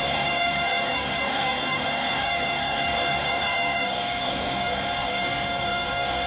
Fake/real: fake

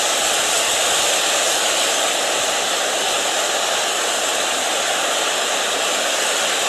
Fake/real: real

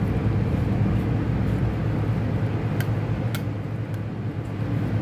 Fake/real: real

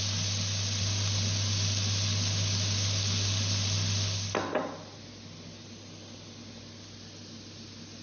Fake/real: real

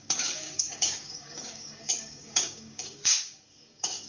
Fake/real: fake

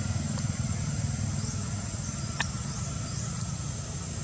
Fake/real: real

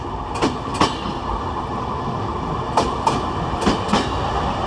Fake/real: real